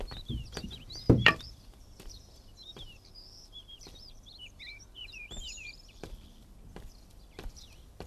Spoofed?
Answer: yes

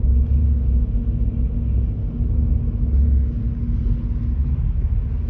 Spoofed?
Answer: no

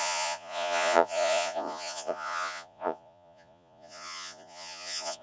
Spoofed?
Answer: yes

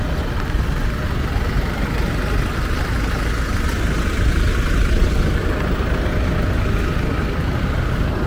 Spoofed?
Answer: no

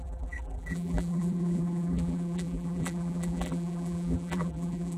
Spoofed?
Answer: yes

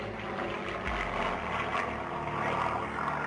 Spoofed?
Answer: no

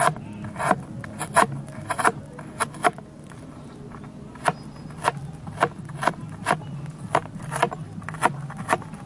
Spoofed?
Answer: no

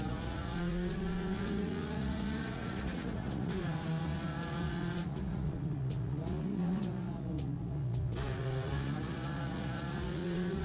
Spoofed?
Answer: yes